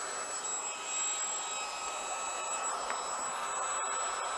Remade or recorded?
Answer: recorded